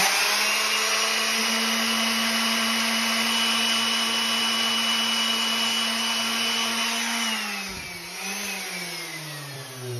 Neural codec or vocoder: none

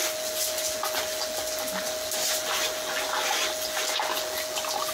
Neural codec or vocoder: none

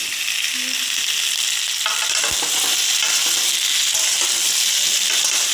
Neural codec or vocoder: none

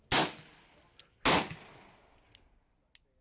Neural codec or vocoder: none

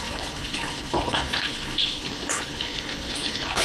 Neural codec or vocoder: codec, HILCodec